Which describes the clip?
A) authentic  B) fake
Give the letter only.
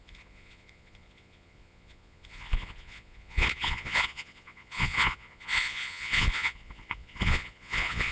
B